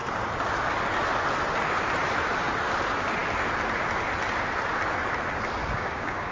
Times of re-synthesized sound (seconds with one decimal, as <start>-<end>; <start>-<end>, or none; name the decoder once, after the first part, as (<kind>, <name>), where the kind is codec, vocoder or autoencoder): 5.6-6.3 (codec, DAC)